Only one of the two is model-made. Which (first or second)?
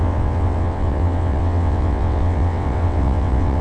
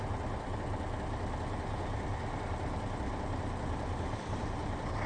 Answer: first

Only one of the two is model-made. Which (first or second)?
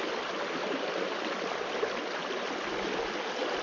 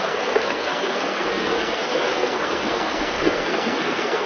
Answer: second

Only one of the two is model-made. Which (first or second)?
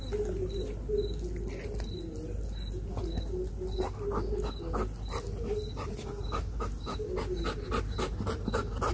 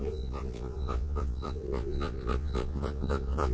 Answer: second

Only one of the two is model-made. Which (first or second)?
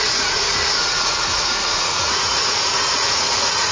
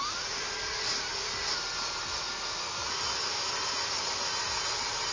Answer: first